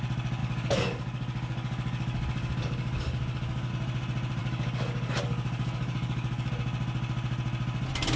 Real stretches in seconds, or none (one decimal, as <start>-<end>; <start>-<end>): 0.0-0.4; 3.7-4.4; 6.5-8.2